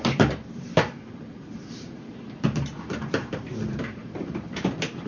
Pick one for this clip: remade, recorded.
remade